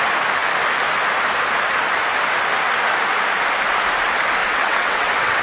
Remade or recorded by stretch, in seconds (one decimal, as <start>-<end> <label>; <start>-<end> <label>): 0.0-4.4 recorded; 4.4-5.4 remade